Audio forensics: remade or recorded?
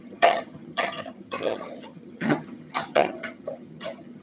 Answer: remade